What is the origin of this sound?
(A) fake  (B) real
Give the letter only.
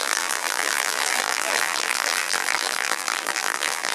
A